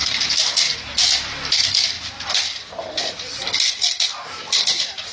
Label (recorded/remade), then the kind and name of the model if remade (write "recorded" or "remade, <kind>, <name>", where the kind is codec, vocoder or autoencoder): recorded